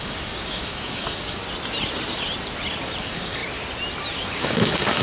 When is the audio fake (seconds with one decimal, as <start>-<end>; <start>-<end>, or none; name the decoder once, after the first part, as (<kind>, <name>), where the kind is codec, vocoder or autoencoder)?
0.0-1.4 (codec, DAC); 3.0-3.4; 4.3-5.0